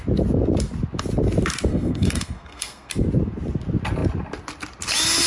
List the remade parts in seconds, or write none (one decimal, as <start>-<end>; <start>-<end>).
1.7-2.9